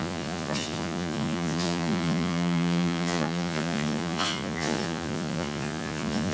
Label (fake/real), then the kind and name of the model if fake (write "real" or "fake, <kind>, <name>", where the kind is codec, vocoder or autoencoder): fake, vocoder, Vocos